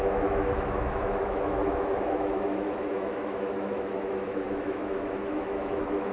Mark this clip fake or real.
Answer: fake